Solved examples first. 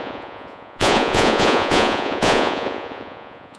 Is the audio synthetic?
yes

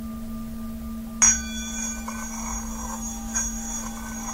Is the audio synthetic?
no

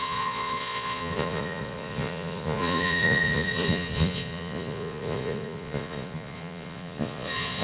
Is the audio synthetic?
yes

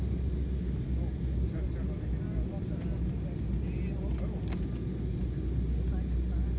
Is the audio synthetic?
no